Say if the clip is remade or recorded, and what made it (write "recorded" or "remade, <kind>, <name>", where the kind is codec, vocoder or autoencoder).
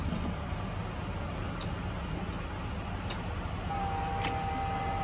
recorded